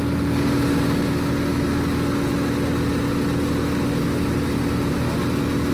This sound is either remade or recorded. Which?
recorded